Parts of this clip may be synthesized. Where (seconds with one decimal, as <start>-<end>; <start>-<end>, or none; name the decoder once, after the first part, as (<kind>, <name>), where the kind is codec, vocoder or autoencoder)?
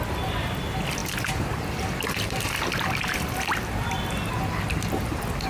none